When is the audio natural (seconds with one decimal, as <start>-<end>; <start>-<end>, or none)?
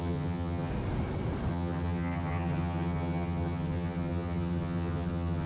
0.7-1.5